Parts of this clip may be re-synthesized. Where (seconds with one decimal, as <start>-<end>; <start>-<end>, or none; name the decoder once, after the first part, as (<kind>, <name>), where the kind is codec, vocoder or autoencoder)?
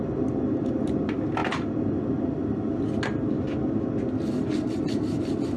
none